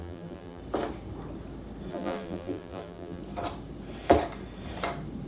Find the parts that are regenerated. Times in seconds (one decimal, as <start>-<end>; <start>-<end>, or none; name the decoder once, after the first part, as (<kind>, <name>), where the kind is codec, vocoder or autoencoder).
0.0-0.6 (vocoder, BigVGAN v2); 1.9-3.2